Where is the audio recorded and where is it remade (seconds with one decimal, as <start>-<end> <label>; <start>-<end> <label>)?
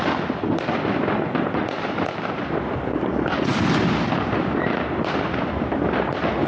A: 0.0-6.5 recorded